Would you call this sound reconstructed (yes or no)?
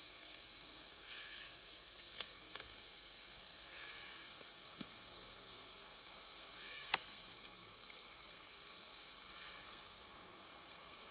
yes